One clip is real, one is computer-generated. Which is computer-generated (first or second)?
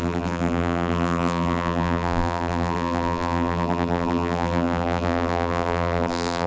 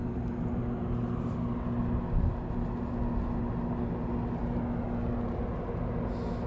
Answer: first